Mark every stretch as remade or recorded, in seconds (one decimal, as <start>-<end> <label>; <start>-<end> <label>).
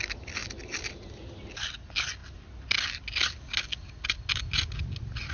0.0-5.3 recorded